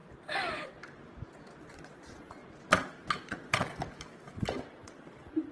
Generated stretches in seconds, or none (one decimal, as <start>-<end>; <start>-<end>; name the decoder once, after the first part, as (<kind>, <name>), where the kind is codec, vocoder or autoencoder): 1.6-2.4 (vocoder, Vocos); 3.2-3.8; 4.7-5.5